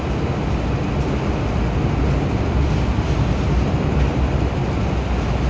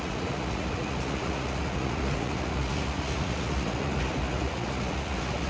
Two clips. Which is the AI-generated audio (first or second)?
second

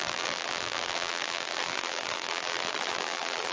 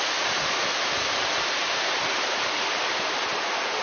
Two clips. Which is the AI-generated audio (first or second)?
first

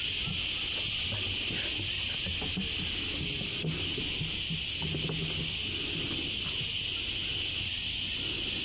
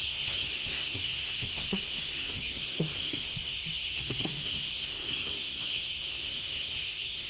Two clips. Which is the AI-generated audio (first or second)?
second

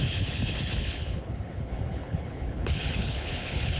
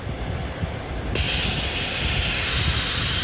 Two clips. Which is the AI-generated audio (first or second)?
first